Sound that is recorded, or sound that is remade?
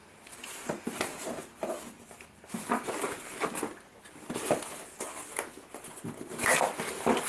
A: recorded